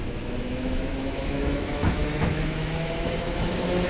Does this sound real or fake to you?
fake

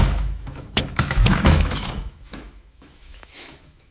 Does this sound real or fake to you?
fake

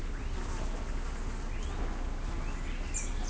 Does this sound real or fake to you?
real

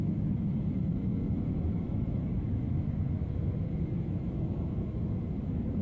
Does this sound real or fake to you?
fake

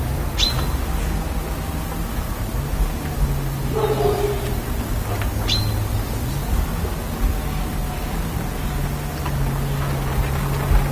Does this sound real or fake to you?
real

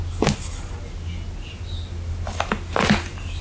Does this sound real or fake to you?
real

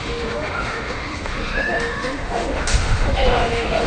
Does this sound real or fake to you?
fake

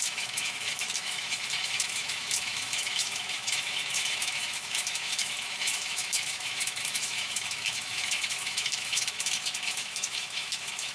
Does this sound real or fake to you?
fake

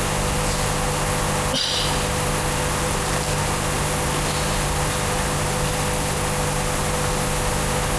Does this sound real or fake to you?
real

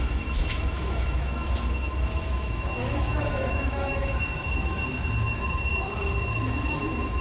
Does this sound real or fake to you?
fake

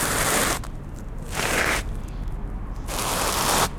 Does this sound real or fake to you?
real